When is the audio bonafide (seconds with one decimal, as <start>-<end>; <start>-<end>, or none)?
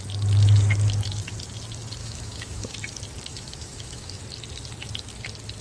0.0-2.0; 2.7-3.3; 4.2-5.6